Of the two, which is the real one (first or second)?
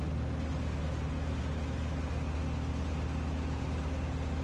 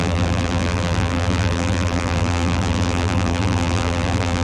first